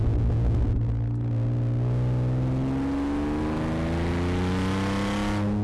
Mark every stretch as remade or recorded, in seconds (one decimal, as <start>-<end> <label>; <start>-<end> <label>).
0.0-5.6 recorded